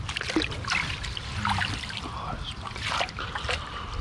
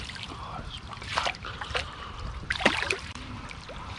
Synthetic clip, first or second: second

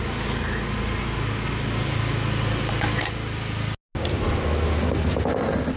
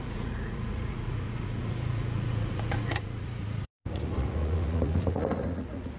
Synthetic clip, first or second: second